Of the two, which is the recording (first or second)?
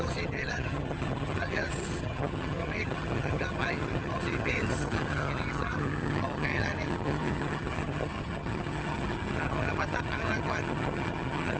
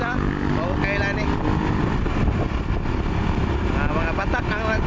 second